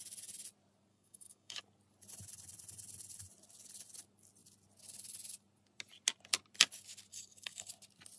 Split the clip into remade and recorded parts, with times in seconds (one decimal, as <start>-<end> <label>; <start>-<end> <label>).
0.0-0.9 recorded; 0.9-1.6 remade; 1.6-7.1 recorded; 7.1-7.7 remade; 7.7-8.2 recorded